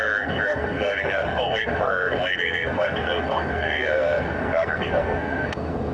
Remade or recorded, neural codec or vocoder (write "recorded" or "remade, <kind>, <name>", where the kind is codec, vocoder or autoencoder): remade, codec, SNAC